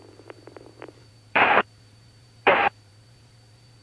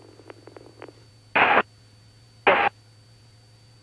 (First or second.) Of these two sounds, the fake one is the first